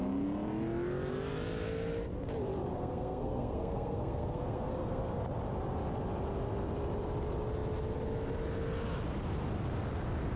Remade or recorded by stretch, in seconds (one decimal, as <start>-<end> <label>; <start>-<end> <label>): 0.0-2.7 recorded; 2.7-5.0 remade; 5.0-10.4 recorded